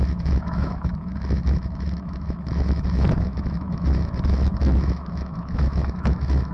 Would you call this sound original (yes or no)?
no